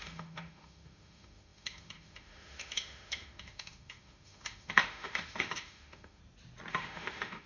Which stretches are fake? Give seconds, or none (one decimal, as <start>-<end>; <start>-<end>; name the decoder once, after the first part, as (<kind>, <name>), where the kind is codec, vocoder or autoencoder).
0.0-6.2 (autoencoder, DAC-VAE); 6.7-7.5